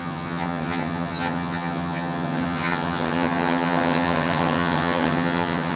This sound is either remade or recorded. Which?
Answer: remade